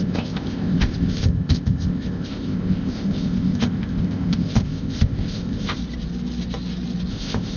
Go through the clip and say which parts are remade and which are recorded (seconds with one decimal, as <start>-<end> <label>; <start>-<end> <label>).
0.0-5.8 remade; 5.8-7.1 recorded; 7.1-7.6 remade